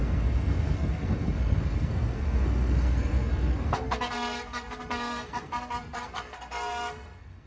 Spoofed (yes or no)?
yes